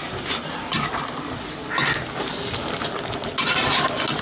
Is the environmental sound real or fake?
real